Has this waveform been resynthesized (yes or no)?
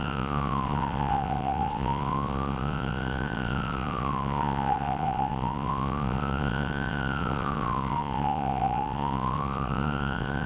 yes